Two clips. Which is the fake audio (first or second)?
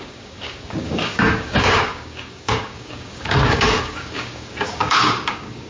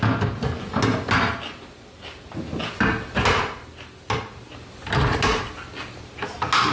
first